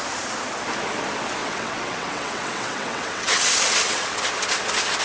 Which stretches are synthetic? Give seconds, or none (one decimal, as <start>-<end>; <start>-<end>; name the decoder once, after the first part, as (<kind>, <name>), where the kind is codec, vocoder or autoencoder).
1.4-4.2 (vocoder, WaveNeXt)